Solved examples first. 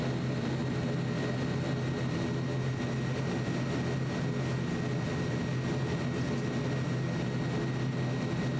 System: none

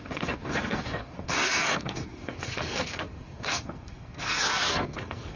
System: codec, SNAC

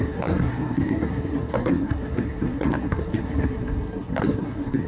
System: codec, SNAC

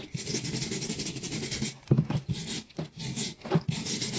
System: none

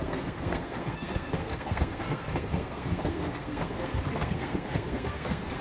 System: codec, SNAC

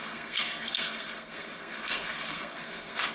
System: codec, SNAC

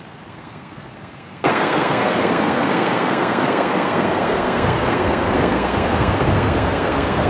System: codec, SNAC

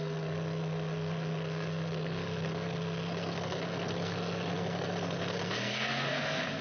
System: codec, SNAC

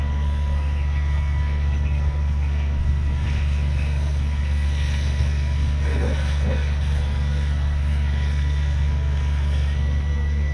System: codec, SNAC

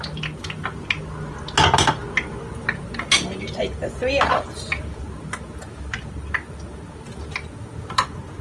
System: none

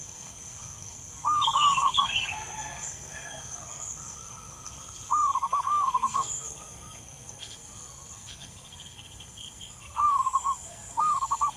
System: codec, SNAC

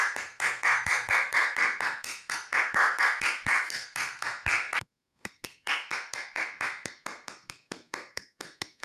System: codec, SNAC